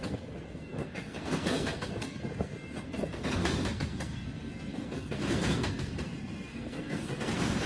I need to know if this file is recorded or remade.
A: remade